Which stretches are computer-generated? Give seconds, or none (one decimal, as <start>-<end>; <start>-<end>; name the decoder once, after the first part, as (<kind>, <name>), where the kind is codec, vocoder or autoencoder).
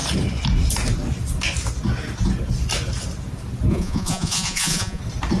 3.7-5.0 (vocoder, Vocos)